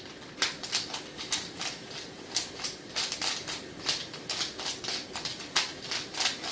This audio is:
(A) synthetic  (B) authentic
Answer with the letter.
B